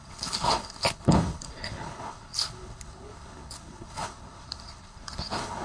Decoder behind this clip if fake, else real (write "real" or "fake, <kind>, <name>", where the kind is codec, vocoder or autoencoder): fake, codec, HILCodec